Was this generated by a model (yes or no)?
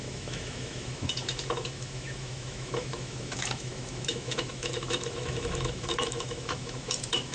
yes